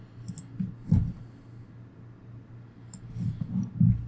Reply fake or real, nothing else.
real